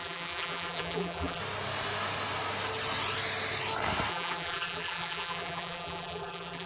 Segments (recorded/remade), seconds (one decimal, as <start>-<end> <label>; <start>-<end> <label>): 0.0-1.4 remade; 1.4-4.1 recorded; 4.1-6.7 remade